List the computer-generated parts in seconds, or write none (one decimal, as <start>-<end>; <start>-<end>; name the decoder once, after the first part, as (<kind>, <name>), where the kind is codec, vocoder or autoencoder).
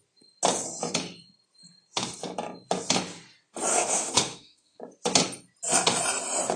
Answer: 3.7-4.8 (autoencoder, DAC-VAE)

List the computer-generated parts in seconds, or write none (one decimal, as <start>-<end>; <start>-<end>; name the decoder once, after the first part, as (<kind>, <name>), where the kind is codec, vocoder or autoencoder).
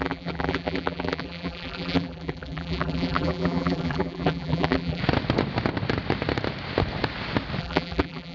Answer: 0.0-5.0 (vocoder, BigVGAN v2); 7.6-8.3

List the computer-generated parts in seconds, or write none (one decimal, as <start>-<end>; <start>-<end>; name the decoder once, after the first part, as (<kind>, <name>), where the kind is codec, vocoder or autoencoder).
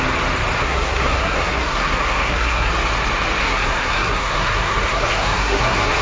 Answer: 0.6-2.7 (codec, SNAC); 3.4-6.0